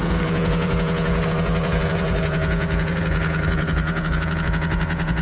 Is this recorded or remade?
remade